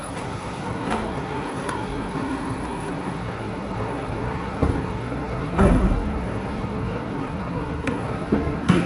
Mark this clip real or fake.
fake